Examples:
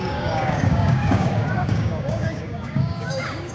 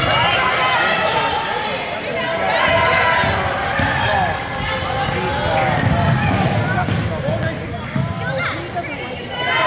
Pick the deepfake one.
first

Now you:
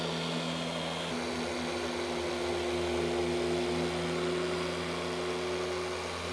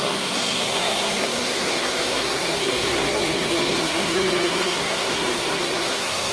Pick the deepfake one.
second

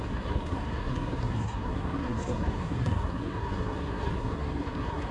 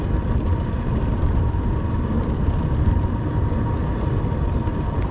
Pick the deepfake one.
first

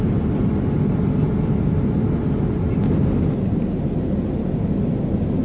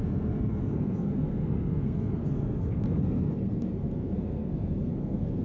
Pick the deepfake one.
second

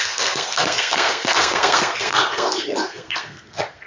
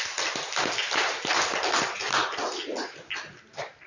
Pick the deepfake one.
first